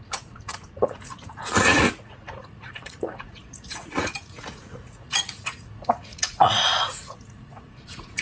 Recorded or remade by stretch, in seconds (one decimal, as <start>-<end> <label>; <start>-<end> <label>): 0.0-8.2 remade